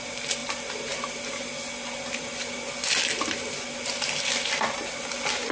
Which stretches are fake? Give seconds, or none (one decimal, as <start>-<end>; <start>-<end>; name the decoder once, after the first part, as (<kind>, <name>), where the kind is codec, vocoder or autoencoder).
none